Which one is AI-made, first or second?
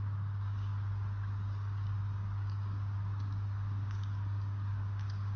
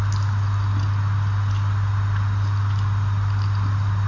first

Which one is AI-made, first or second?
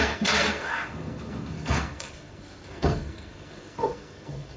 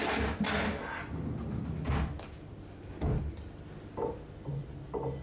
first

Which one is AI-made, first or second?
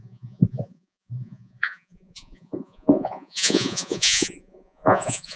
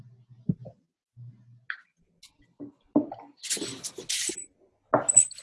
first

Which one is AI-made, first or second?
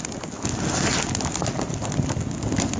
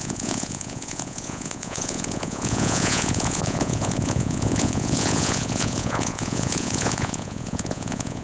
second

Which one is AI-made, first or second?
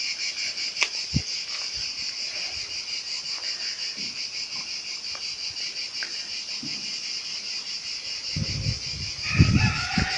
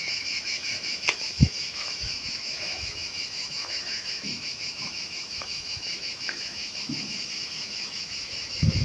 second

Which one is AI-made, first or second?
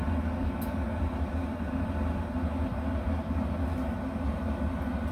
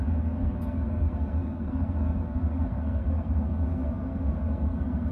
second